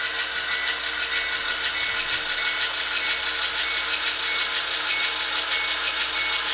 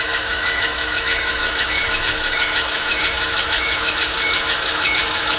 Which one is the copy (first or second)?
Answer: second